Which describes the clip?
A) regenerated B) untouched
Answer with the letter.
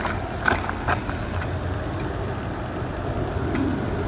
B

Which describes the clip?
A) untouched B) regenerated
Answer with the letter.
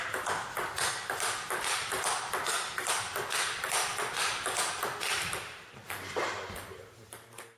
A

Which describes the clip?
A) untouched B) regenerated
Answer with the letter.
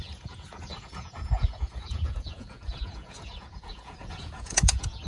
B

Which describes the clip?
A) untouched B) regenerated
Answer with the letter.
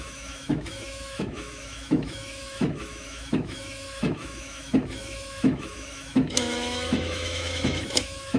B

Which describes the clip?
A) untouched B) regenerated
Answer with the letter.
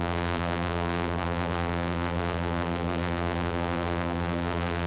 B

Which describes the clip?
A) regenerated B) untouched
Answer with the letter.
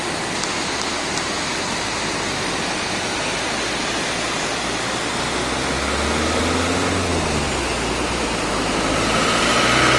B